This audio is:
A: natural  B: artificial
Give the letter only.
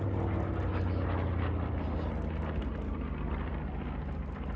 A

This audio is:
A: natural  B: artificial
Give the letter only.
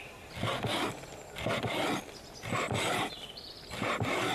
A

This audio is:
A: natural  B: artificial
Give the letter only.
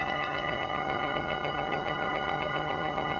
B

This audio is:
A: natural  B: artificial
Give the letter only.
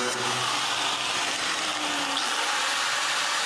A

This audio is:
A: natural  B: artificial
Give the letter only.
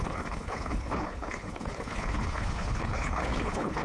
B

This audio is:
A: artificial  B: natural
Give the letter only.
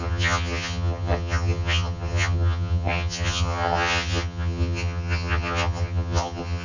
A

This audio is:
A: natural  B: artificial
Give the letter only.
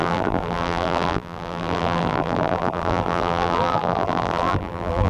B